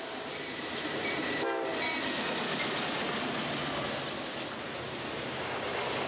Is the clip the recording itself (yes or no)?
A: yes